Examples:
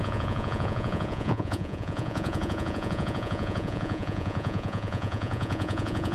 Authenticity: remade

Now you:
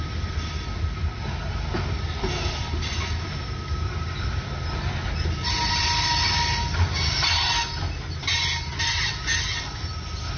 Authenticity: recorded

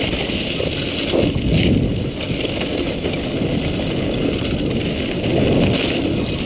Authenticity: recorded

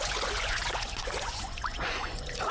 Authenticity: remade